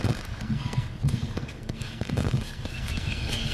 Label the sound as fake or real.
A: fake